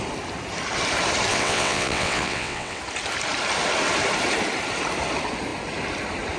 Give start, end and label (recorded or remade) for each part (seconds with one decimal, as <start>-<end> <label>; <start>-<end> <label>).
0.0-1.3 recorded; 1.3-2.8 remade; 2.8-6.4 recorded